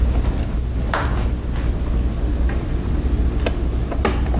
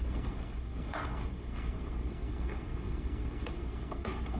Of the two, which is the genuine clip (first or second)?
first